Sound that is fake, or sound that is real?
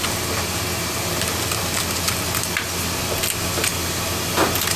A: real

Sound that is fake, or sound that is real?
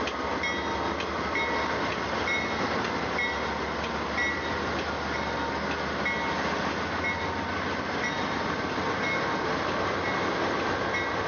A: real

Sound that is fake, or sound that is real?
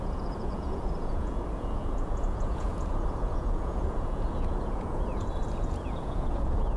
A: fake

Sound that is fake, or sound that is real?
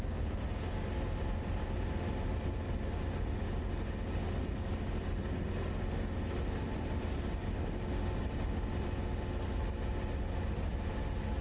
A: real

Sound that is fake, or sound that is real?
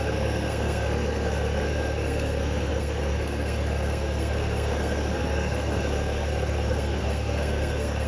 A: fake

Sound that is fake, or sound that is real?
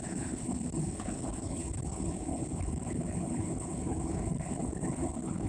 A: fake